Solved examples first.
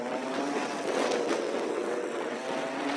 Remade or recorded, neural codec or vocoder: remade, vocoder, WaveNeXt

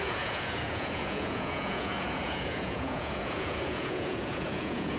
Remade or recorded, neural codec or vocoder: remade, vocoder, Vocos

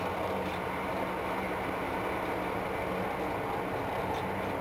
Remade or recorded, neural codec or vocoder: recorded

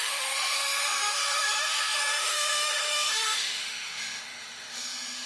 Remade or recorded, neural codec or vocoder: remade, autoencoder, DAC-VAE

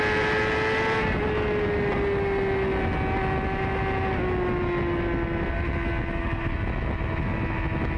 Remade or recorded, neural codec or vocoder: recorded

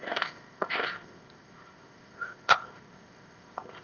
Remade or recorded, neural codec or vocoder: remade, codec, ZipCodec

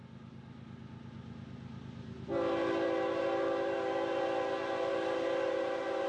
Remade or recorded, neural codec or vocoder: recorded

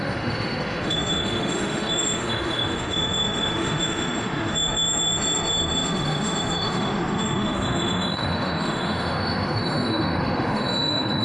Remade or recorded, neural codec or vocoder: remade, autoencoder, DAC-VAE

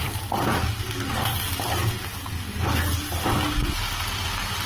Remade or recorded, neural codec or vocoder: recorded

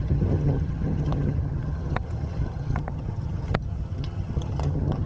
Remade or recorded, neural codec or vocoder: remade, vocoder, HiFi-GAN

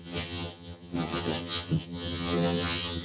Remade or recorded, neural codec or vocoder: remade, vocoder, HiFi-GAN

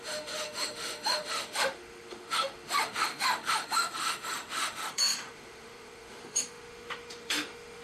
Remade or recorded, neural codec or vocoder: remade, autoencoder, DAC-VAE